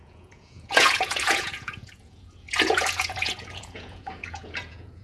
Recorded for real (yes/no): no